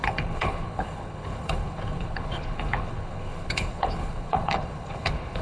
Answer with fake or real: fake